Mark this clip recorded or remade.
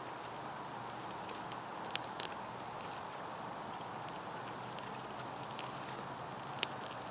recorded